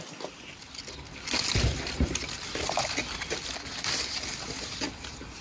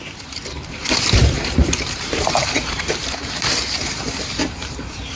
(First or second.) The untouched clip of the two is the first